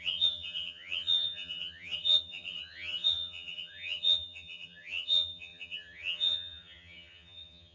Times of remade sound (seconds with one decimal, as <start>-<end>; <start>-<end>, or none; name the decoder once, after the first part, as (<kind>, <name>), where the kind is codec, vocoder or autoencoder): 0.0-7.7 (vocoder, HiFi-GAN)